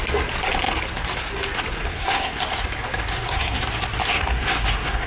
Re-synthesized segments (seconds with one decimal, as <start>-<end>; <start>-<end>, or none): 1.8-2.4; 3.1-3.6; 4.1-5.1